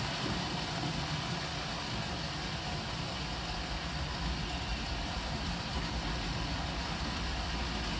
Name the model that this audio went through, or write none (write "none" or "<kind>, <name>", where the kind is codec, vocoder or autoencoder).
none